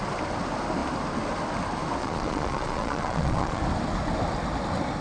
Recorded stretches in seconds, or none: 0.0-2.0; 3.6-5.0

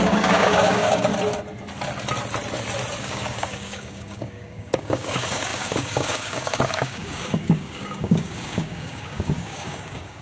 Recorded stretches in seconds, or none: 1.1-3.0

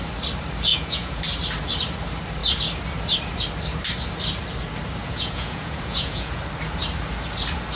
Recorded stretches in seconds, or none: 0.0-0.7; 1.2-5.0; 6.4-7.8

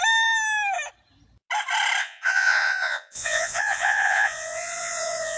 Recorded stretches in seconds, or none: 0.0-2.0

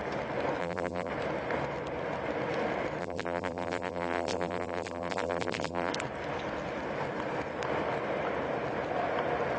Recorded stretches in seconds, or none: 0.0-0.6; 1.1-3.0; 5.9-9.6